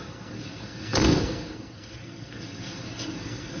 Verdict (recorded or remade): remade